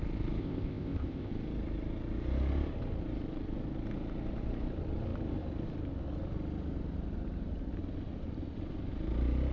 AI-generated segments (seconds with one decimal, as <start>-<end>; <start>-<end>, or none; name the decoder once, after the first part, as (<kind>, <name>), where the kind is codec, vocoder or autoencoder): 0.4-1.3 (codec, ZipCodec)